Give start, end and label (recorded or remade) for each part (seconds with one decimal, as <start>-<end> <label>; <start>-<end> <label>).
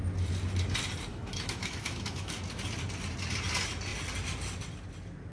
0.0-1.1 recorded; 1.1-2.4 remade; 2.4-5.3 recorded